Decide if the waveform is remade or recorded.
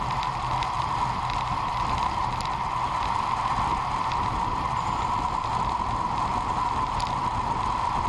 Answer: recorded